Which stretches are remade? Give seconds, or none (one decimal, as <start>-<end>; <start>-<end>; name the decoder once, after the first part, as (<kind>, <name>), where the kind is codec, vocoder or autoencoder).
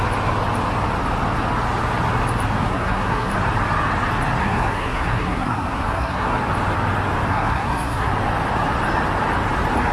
2.6-3.3 (codec, SNAC); 4.4-6.4; 7.3-8.1